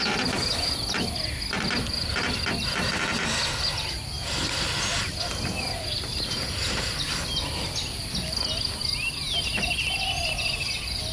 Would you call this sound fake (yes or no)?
no